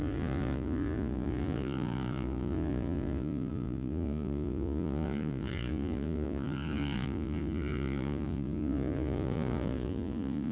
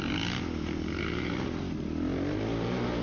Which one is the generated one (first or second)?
first